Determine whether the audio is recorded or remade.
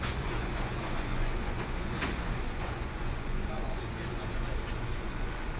remade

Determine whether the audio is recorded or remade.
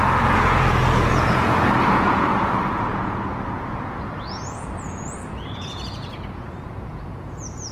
remade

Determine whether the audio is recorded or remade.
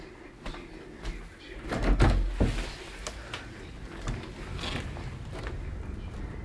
recorded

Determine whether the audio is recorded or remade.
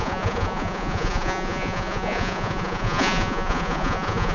remade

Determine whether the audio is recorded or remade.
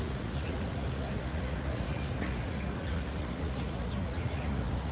remade